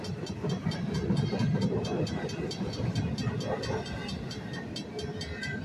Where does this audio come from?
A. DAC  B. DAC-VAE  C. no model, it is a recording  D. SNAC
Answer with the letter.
C